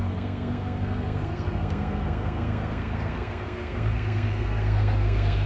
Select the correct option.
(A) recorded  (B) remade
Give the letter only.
B